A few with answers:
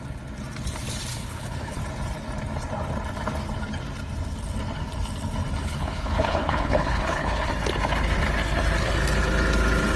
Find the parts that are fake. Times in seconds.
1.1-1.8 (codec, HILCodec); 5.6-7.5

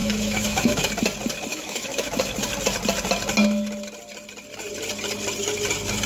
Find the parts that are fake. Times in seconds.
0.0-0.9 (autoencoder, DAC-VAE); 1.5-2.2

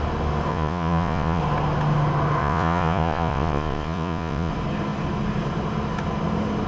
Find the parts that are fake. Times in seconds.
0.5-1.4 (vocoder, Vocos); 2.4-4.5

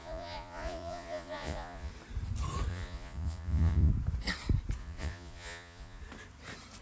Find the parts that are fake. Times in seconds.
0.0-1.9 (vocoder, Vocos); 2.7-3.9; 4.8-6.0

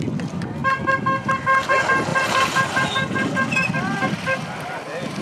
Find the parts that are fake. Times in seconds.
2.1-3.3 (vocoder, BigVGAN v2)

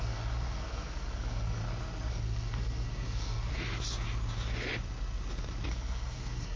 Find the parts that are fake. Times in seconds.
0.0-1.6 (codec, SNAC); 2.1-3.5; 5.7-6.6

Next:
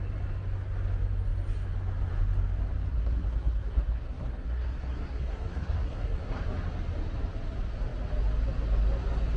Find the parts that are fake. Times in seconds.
2.9-6.4 (codec, SNAC)

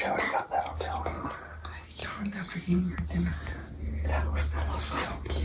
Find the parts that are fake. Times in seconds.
2.0-2.8 (codec, DAC)